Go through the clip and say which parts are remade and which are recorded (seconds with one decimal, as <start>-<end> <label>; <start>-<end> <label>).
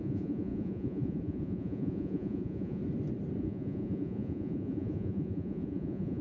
0.0-2.8 remade; 2.8-3.4 recorded; 3.4-6.2 remade